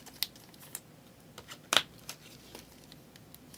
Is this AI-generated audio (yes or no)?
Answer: no